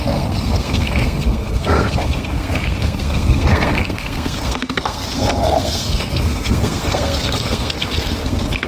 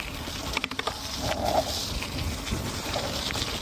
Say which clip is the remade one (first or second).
first